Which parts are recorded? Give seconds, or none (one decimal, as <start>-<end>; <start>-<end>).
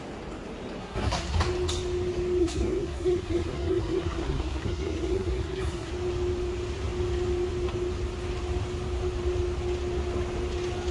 0.0-0.8; 1.4-2.4; 5.9-10.9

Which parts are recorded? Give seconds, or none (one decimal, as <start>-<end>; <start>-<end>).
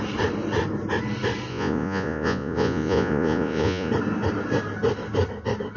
0.0-1.5; 3.9-5.8